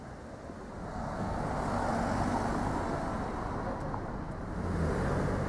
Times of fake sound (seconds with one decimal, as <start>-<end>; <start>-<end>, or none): 0.9-1.4